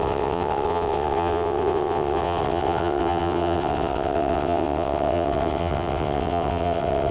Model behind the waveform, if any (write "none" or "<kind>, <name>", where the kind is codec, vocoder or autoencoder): vocoder, WaveNeXt